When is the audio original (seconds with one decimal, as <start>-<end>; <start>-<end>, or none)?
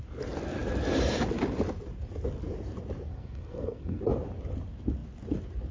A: 0.0-3.1; 4.0-5.7